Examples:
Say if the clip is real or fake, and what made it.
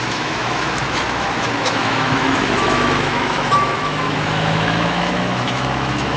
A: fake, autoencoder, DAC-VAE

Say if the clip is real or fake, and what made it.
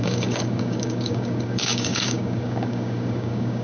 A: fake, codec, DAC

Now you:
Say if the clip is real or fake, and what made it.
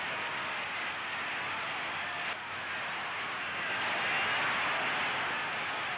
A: real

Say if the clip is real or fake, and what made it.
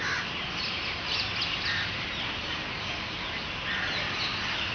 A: real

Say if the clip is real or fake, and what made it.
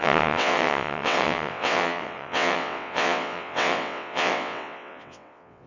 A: fake, vocoder, WaveNeXt